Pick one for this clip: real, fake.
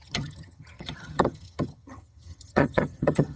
fake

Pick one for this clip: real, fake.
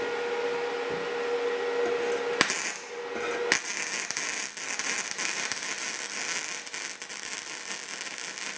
real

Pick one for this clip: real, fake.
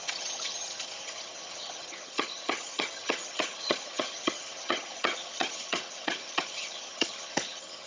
fake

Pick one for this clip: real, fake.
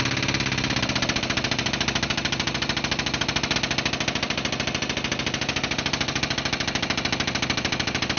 real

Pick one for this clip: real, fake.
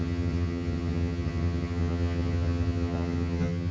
fake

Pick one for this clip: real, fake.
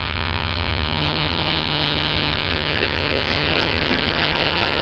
fake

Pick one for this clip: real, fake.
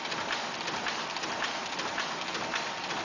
real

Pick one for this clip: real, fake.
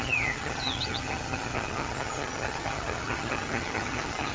fake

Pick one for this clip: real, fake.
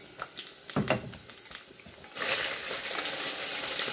real